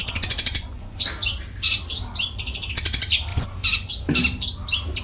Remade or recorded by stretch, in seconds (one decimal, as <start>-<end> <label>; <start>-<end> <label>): 0.0-1.0 remade; 1.0-3.3 recorded; 3.3-3.9 remade; 3.9-5.0 recorded